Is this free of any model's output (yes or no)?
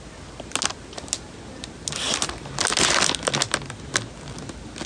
yes